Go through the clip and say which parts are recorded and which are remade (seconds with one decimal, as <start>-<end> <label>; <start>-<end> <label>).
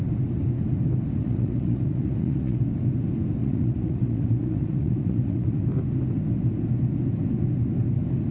0.0-1.2 recorded; 1.2-2.6 remade; 2.6-3.4 recorded; 3.4-5.6 remade; 5.6-8.3 recorded